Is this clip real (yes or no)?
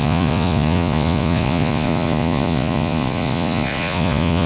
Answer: no